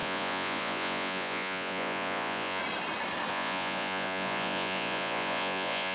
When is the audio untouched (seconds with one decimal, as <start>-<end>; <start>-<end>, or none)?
2.6-3.3